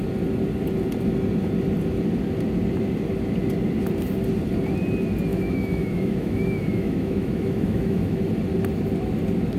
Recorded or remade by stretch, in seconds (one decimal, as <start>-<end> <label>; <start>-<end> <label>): 0.0-5.3 recorded; 5.3-8.2 remade; 8.2-9.6 recorded